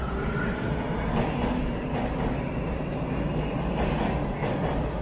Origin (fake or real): real